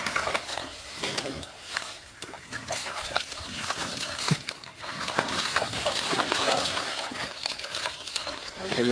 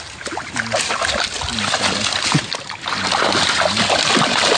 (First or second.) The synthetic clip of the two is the first